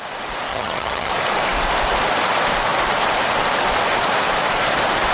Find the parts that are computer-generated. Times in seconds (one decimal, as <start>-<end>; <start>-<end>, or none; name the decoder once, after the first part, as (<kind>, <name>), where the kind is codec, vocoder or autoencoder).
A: 0.5-1.1 (vocoder, HiFi-GAN)